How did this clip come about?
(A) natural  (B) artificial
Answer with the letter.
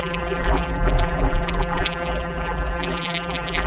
B